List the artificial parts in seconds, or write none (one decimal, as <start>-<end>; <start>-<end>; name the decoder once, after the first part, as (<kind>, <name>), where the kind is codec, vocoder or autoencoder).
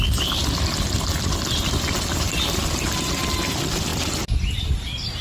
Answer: none